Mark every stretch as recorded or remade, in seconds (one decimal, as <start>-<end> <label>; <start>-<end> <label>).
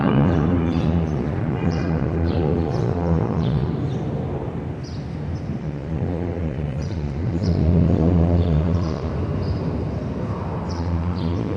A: 0.0-3.7 remade; 3.7-5.6 recorded; 5.6-9.1 remade; 9.1-10.7 recorded; 10.7-11.6 remade